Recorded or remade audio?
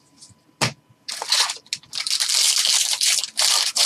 recorded